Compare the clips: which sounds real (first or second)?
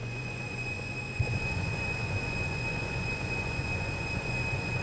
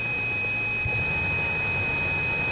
second